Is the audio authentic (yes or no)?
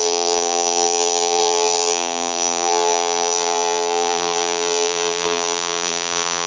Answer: no